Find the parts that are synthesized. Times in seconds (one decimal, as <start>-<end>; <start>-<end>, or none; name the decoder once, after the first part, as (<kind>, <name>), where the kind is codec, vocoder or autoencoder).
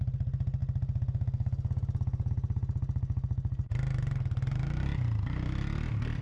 none